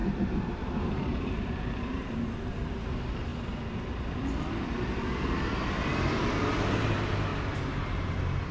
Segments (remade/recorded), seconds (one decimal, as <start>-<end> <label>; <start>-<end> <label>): 0.0-0.5 recorded; 0.5-3.3 remade; 3.3-6.7 recorded; 6.7-7.3 remade; 7.3-8.5 recorded